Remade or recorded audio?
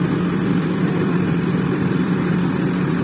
remade